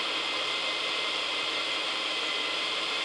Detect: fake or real fake